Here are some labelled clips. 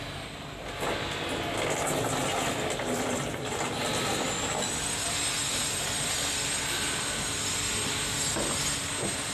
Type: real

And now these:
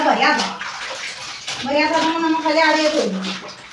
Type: real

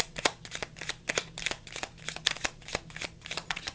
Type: real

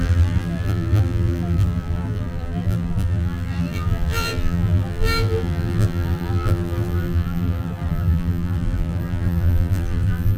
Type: fake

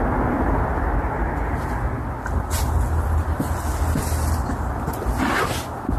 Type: real